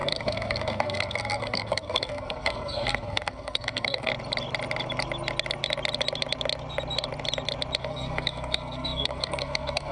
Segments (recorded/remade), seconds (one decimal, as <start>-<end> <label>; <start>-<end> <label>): 0.0-4.1 remade; 4.1-7.8 recorded; 7.8-9.9 remade